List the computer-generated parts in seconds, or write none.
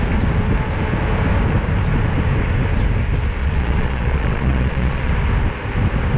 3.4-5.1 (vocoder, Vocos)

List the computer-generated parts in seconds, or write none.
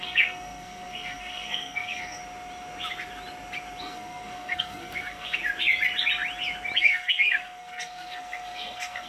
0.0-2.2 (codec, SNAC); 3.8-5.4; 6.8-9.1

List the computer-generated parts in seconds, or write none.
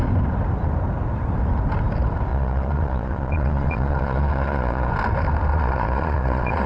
2.3-4.9 (vocoder, Vocos); 5.5-6.7